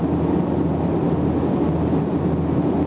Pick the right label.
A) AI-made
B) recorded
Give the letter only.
B